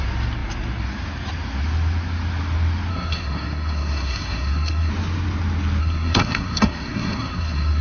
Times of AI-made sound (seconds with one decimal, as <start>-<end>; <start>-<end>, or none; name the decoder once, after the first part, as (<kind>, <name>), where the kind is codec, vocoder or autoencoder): 2.9-4.9 (codec, SNAC); 5.8-7.8